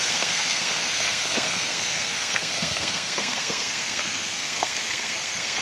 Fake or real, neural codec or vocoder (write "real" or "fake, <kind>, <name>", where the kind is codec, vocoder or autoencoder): fake, codec, SNAC